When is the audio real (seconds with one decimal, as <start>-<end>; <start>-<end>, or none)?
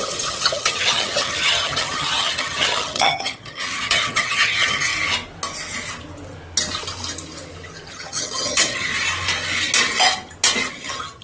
4.9-7.9; 8.9-10.7